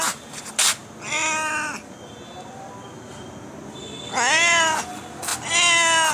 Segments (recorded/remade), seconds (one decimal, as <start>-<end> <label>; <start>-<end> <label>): 0.0-6.1 recorded